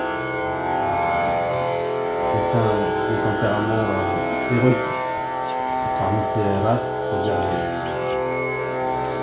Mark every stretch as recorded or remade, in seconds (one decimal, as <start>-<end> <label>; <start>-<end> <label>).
0.0-0.9 recorded; 0.9-1.5 remade; 1.5-9.2 recorded